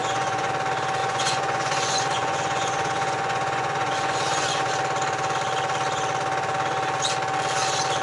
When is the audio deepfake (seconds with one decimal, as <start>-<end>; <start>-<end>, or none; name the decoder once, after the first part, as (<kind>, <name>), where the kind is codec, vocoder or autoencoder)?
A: 0.0-0.5 (vocoder, Vocos); 1.0-4.7